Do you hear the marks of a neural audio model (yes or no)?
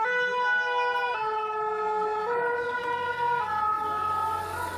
no